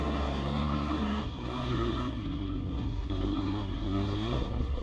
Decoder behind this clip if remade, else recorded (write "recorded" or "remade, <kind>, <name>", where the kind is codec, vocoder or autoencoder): remade, codec, SNAC